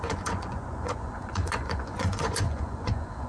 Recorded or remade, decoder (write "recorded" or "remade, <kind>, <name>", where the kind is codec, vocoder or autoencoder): remade, vocoder, Vocos